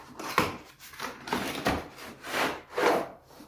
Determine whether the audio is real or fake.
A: fake